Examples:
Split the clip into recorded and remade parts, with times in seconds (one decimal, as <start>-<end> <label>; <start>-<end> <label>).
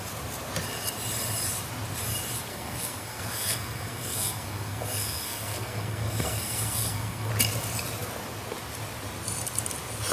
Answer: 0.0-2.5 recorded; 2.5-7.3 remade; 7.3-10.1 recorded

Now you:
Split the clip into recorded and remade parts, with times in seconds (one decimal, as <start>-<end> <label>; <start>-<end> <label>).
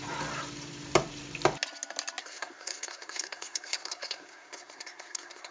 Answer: 0.0-2.2 recorded; 2.2-5.5 remade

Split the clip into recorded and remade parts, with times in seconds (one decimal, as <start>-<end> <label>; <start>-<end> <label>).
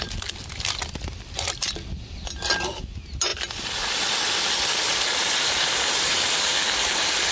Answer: 0.0-7.3 recorded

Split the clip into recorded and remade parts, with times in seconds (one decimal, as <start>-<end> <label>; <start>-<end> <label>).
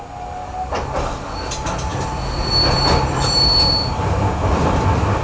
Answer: 0.0-5.2 recorded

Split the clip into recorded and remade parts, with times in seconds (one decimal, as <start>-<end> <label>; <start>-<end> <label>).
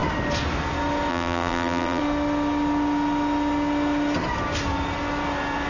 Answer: 0.0-1.1 recorded; 1.1-2.0 remade; 2.0-5.7 recorded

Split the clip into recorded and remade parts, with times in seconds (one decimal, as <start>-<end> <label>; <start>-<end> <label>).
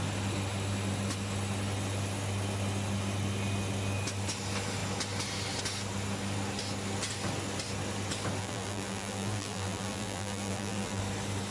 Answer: 0.0-8.4 recorded; 8.4-11.0 remade; 11.0-11.5 recorded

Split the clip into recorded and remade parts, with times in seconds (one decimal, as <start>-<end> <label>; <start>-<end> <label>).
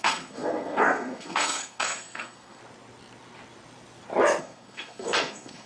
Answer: 0.0-2.6 remade; 2.6-4.4 recorded; 4.4-5.7 remade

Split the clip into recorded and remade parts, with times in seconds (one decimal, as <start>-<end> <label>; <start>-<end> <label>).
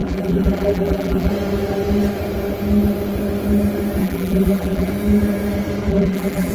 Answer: 0.0-1.3 remade; 1.3-4.0 recorded; 4.0-4.9 remade; 4.9-5.9 recorded; 5.9-6.5 remade